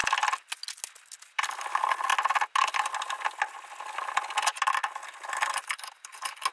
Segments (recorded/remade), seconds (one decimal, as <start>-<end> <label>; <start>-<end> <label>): 0.0-6.5 recorded